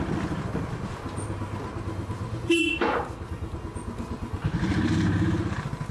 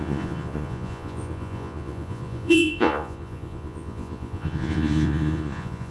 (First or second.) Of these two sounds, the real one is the first